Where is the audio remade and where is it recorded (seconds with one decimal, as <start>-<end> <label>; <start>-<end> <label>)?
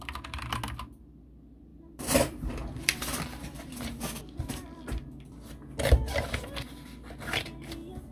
0.0-1.7 recorded; 1.7-5.1 remade; 5.1-8.1 recorded